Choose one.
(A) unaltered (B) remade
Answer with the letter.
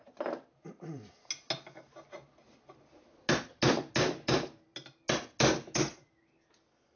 A